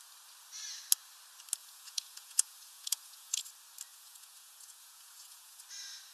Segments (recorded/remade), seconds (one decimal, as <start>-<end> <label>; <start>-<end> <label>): 0.0-1.6 recorded; 1.6-3.5 remade; 3.5-3.9 recorded; 3.9-5.6 remade; 5.6-6.1 recorded